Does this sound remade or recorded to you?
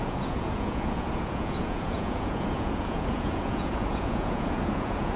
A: remade